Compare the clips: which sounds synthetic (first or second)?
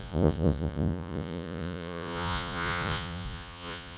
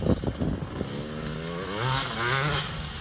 first